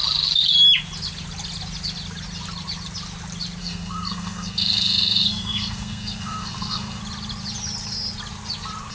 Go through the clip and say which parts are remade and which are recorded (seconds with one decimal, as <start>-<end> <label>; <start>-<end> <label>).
0.0-3.6 recorded; 3.6-7.0 remade; 7.0-8.9 recorded